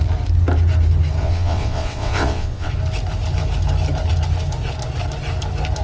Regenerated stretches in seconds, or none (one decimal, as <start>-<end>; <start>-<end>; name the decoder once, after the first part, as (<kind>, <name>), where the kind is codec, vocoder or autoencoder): 1.2-2.7 (vocoder, WaveNeXt)

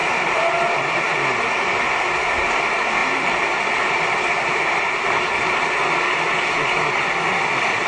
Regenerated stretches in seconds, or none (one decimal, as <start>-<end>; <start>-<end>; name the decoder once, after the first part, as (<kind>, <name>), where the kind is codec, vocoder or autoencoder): 0.0-0.6 (vocoder, BigVGAN v2); 3.0-5.6